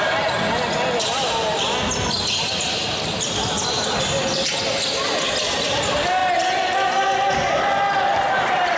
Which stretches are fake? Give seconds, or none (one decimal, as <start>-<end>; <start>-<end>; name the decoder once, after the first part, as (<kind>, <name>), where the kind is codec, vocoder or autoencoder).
none